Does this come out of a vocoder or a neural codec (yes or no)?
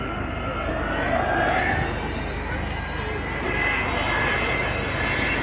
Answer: no